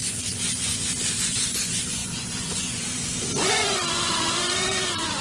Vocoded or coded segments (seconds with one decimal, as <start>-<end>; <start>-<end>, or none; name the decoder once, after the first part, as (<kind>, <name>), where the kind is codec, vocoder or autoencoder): 0.0-5.2 (vocoder, Vocos)